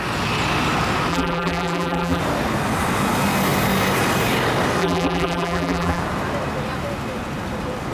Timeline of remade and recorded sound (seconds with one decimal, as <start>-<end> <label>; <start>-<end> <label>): 0.0-1.1 recorded; 1.1-2.2 remade; 2.2-4.8 recorded; 4.8-6.0 remade; 6.0-7.9 recorded